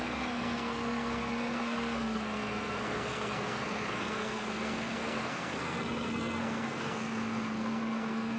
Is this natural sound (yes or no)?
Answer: no